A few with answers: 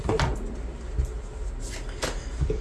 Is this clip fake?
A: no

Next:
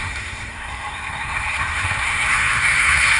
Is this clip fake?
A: yes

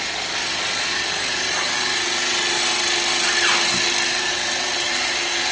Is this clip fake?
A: no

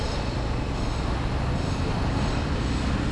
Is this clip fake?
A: no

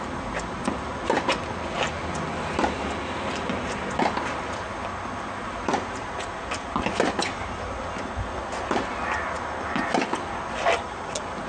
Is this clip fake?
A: no